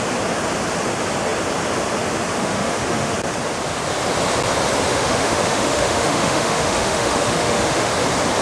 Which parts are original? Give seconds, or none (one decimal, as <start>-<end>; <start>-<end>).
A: 0.0-2.4; 3.1-4.9; 7.9-8.4